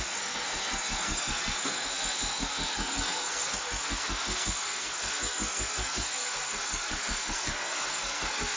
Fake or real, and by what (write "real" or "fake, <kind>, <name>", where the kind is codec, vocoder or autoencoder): fake, codec, SNAC